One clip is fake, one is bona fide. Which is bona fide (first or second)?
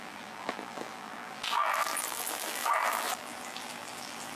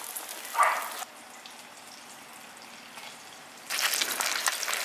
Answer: second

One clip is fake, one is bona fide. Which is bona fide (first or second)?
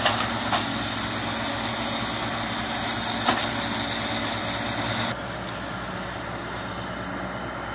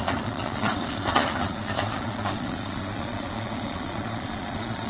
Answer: first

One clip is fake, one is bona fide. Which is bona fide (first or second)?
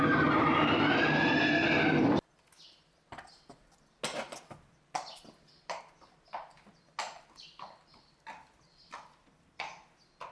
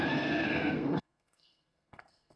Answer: first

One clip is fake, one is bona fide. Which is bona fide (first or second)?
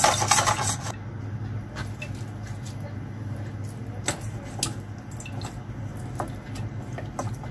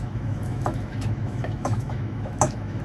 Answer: first